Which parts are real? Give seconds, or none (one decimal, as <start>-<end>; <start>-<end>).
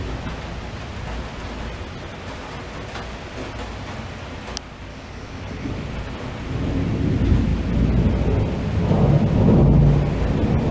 0.0-4.9; 5.7-10.7